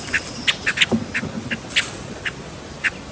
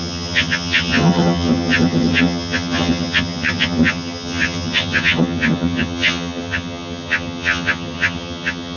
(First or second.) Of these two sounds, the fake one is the second